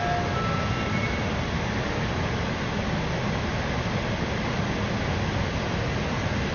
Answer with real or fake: real